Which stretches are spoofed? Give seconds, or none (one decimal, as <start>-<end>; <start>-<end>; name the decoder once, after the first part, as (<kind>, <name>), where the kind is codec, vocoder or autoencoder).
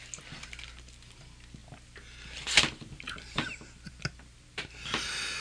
none